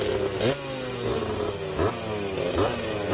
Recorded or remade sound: recorded